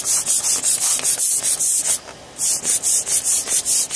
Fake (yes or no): no